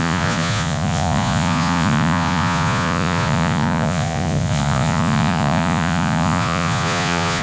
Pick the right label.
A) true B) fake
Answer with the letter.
B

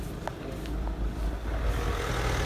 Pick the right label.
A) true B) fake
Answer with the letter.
A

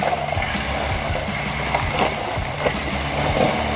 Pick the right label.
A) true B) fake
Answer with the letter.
A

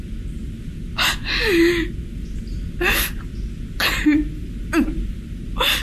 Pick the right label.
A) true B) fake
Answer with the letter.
A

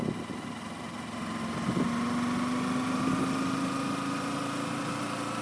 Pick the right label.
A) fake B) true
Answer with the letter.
B